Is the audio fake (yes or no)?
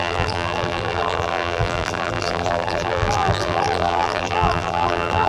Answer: yes